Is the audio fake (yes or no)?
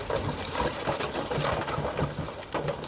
no